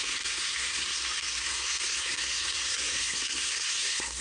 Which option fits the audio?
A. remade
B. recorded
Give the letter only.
A